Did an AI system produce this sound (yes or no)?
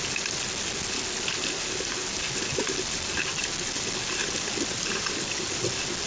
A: yes